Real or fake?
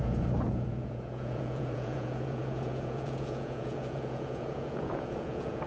fake